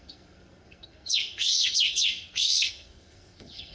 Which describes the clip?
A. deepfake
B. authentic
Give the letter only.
A